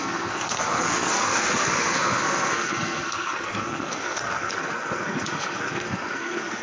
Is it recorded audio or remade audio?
remade